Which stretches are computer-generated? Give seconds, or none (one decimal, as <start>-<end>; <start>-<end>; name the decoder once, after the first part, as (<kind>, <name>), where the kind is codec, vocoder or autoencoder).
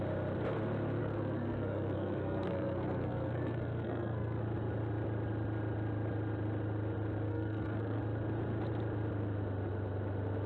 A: 1.0-4.4 (codec, SNAC); 7.3-8.0